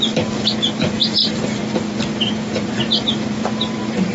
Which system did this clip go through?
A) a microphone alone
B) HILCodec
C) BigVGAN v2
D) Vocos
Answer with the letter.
C